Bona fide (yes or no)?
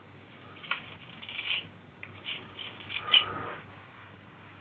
no